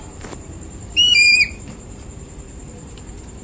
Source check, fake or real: fake